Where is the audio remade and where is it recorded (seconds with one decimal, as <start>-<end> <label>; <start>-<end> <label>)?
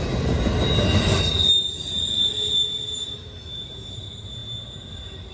0.0-5.3 recorded